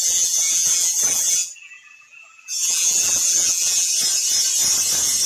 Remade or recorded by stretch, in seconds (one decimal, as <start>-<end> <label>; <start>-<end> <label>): 0.0-3.9 remade; 3.9-5.3 recorded